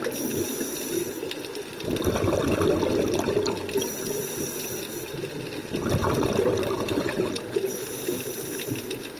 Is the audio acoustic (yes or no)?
yes